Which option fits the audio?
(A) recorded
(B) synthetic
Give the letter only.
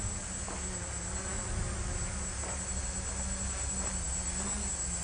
A